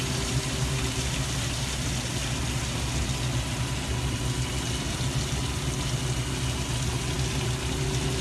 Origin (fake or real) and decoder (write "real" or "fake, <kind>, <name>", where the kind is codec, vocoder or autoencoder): real